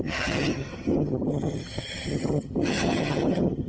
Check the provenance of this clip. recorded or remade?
remade